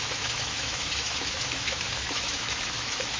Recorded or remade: remade